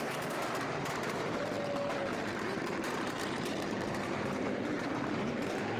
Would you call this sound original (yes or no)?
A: no